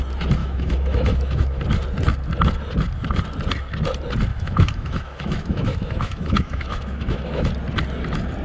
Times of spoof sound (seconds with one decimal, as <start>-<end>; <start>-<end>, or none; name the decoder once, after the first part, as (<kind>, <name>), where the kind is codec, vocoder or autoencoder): 0.4-1.6 (autoencoder, DAC-VAE); 4.3-7.5